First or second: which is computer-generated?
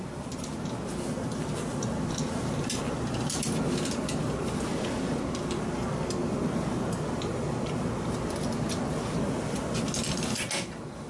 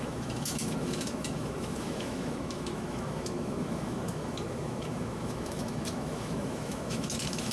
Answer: second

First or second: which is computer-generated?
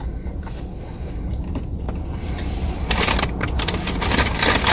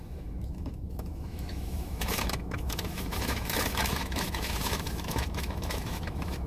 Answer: second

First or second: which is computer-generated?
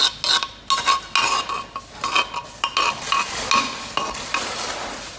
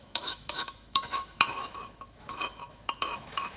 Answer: second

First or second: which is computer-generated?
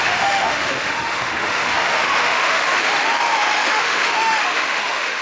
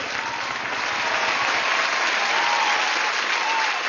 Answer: first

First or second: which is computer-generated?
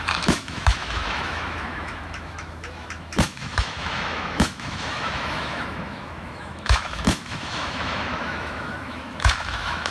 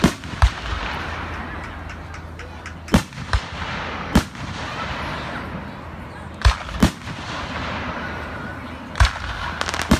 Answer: first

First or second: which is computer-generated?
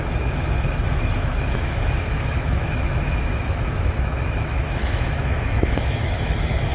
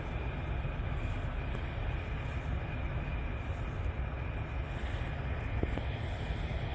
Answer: first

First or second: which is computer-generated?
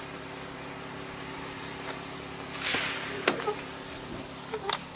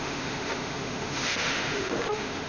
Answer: second